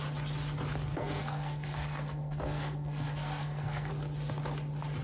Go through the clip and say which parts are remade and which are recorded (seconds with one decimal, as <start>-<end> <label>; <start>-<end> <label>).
0.0-0.9 recorded; 0.9-3.9 remade; 3.9-5.0 recorded